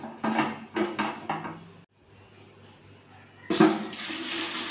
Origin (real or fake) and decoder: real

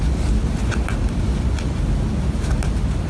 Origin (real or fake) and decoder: real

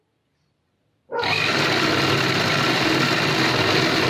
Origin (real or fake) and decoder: real